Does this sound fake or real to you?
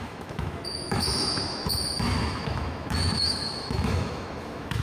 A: fake